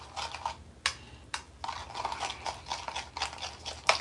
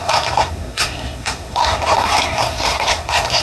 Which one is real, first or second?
first